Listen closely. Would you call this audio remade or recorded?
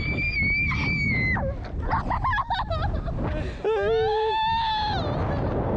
recorded